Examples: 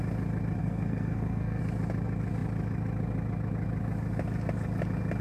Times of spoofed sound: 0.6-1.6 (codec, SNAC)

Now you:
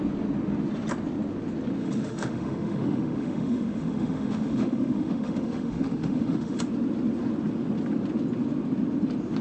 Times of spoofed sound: 1.8-6.6 (autoencoder, DAC-VAE)

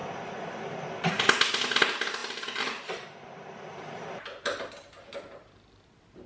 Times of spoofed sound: 0.0-1.1 (vocoder, BigVGAN v2); 2.2-4.7